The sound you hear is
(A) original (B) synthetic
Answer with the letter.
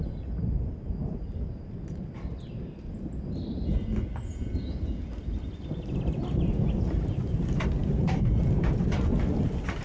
A